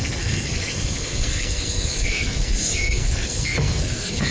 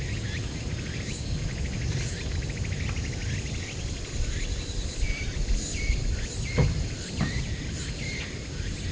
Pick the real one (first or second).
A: second